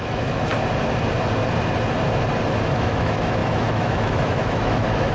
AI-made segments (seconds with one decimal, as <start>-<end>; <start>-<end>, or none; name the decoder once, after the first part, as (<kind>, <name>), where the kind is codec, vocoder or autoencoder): 0.0-0.5 (autoencoder, DAC-VAE); 2.7-5.1